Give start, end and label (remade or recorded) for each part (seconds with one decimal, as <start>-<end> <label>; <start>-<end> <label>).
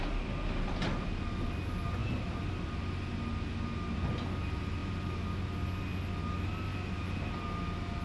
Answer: 0.0-8.0 recorded